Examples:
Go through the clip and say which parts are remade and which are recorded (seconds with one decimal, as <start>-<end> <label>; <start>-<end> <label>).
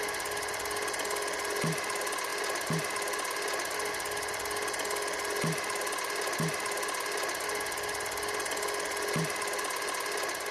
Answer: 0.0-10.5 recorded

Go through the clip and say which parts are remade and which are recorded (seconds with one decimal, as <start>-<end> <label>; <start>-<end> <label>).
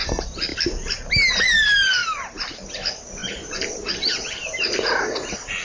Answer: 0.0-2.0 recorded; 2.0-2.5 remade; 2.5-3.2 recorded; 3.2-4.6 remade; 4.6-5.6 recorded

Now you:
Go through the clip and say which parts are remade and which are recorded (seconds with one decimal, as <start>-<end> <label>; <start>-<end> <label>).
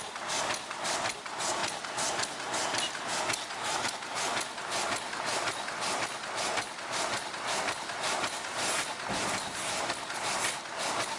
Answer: 0.0-11.2 recorded